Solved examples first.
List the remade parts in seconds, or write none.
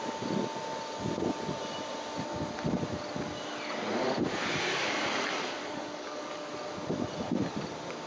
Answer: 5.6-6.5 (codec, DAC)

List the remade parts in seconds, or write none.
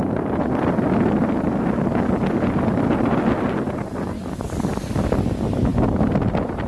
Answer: none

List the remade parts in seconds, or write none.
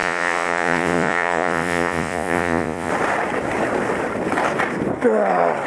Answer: 0.0-2.9 (vocoder, Vocos)